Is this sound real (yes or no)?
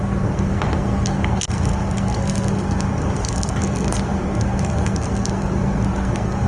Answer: no